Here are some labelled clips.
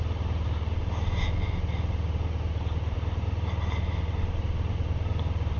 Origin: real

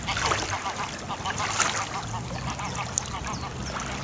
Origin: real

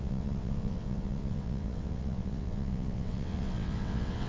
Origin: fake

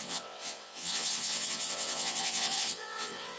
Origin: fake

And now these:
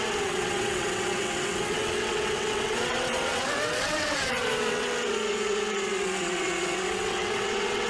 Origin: fake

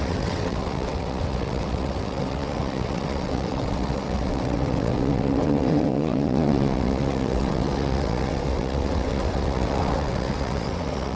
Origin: fake